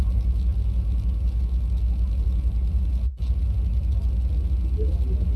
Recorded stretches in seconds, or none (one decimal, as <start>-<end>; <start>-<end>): 0.0-5.4

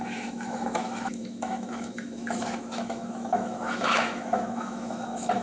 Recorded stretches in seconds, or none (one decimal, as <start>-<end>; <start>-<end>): none